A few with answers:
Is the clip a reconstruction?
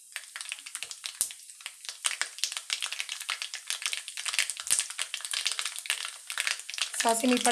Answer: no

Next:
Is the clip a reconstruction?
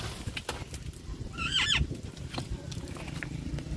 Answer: no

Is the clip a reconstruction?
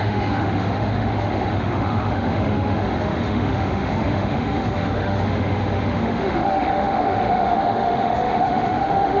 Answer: yes